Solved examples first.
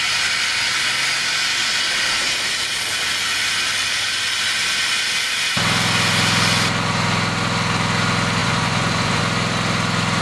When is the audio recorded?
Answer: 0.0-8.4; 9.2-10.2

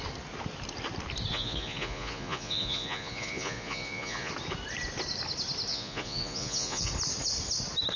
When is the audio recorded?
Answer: 0.0-1.3; 4.3-5.7; 6.9-8.0

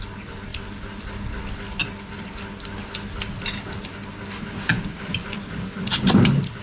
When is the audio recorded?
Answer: 0.0-0.5; 1.0-4.9

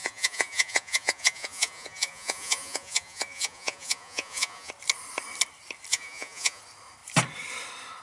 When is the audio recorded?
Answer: 4.7-5.9; 6.6-8.0